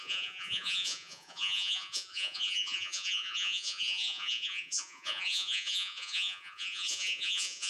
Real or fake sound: fake